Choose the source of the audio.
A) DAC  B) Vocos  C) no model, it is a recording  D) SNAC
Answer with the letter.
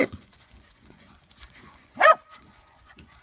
B